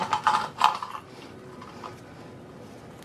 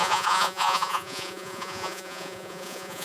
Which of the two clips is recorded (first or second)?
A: first